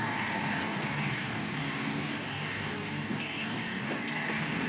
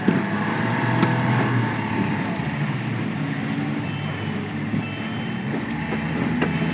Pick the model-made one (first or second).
first